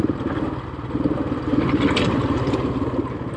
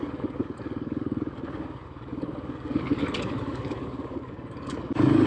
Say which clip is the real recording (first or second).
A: first